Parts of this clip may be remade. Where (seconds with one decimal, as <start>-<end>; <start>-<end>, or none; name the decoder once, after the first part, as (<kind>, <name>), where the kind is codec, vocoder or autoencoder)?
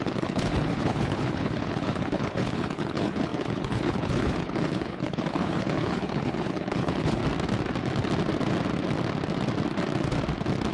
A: 0.0-7.2 (codec, HILCodec)